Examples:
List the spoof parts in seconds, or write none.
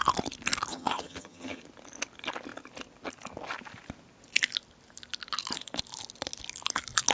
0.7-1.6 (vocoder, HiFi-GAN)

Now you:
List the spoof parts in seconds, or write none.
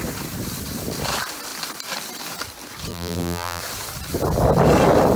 2.9-3.6 (vocoder, BigVGAN v2)